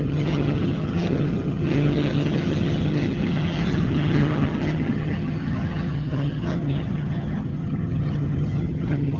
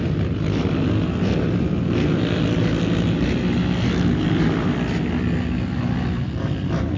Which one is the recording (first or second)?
second